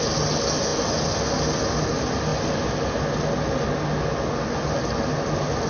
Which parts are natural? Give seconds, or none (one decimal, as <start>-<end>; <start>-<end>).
0.0-5.7

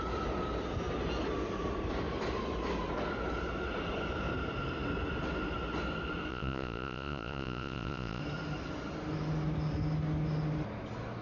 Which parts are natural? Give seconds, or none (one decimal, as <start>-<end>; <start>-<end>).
0.0-6.3; 8.2-11.2

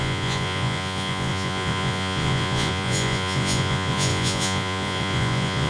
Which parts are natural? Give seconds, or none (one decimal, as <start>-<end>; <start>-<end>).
none

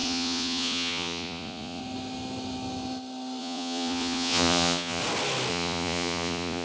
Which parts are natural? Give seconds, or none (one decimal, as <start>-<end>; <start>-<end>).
1.8-3.4; 5.0-5.5

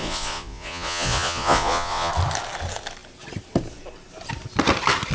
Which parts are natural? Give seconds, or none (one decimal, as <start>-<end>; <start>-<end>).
2.1-5.1

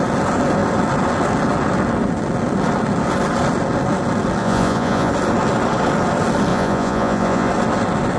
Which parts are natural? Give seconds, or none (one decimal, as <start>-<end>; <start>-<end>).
0.0-4.4; 5.1-6.5; 7.5-8.2